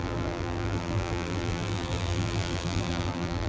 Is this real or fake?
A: fake